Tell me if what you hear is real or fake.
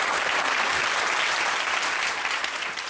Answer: real